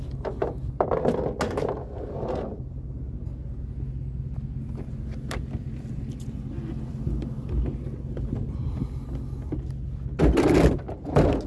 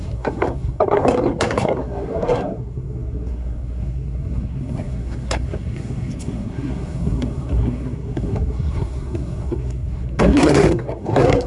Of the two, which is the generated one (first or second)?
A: second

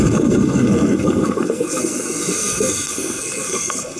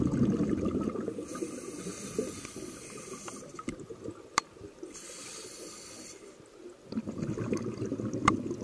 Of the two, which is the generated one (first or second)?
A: first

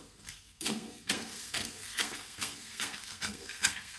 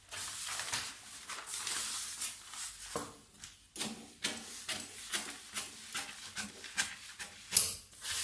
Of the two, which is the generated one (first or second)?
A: first